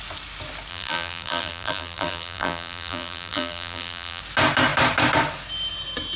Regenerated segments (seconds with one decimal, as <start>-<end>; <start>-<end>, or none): 0.7-4.2